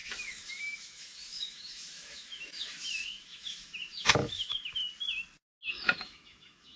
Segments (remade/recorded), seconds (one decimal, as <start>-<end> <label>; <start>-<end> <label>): 0.0-4.8 remade; 4.8-5.7 recorded; 5.7-6.8 remade